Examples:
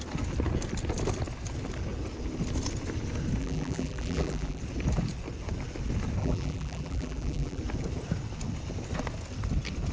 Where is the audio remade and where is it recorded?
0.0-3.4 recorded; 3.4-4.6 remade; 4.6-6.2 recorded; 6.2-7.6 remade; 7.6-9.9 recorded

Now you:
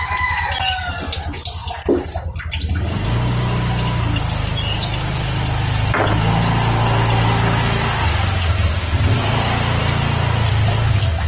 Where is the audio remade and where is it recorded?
0.0-11.3 recorded

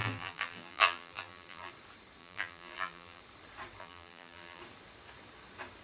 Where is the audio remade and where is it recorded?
0.0-1.7 remade; 1.7-2.2 recorded; 2.2-3.2 remade; 3.2-3.8 recorded; 3.8-4.6 remade; 4.6-5.8 recorded

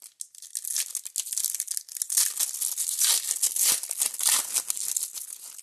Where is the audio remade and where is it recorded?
0.0-5.6 recorded

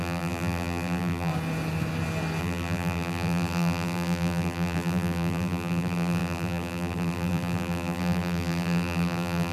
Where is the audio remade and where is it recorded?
0.0-1.3 remade; 1.3-2.4 recorded; 2.4-9.5 remade

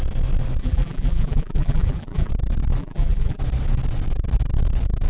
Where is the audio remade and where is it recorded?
0.0-0.6 recorded; 0.6-2.3 remade; 2.3-2.8 recorded; 2.8-3.4 remade; 3.4-5.1 recorded